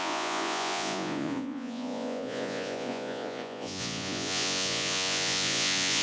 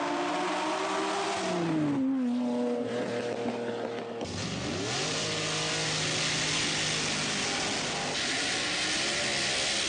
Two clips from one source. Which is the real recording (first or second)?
second